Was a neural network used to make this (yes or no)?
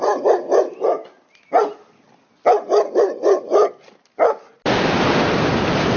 no